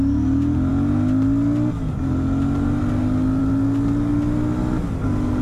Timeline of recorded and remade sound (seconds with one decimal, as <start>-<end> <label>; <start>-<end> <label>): 0.0-5.4 recorded